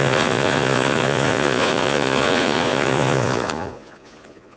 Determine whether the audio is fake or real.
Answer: fake